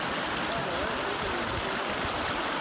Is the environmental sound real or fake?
real